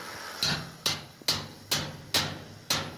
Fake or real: real